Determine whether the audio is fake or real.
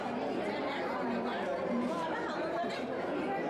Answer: real